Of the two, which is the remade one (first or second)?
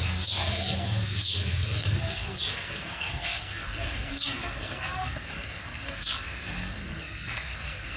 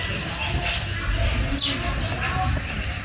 first